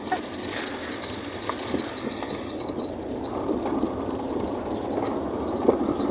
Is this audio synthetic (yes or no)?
no